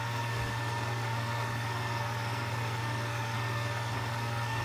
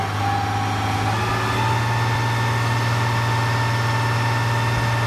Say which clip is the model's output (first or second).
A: first